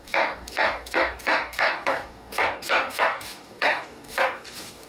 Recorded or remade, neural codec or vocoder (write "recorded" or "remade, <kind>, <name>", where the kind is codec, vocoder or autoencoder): remade, codec, DAC